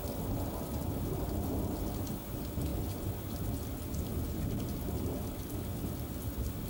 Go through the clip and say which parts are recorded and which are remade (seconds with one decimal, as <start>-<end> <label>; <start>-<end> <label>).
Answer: 0.0-6.7 recorded